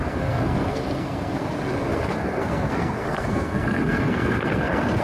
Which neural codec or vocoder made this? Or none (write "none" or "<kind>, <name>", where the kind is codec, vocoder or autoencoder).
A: codec, SNAC